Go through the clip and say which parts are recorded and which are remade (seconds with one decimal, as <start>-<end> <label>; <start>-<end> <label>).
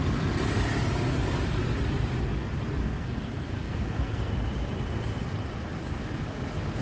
0.0-2.8 recorded; 2.8-4.3 remade; 4.3-6.8 recorded